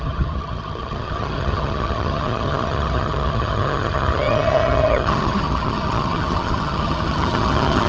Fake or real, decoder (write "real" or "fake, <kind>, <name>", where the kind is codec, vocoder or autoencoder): fake, vocoder, HiFi-GAN